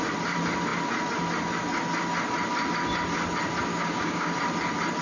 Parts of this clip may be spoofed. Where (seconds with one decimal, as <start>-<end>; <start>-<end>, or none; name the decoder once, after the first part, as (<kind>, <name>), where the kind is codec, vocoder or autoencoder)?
3.7-4.3 (codec, DAC)